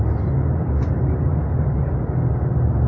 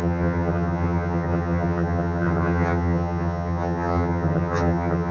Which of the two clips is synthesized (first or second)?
second